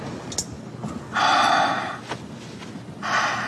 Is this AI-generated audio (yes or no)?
no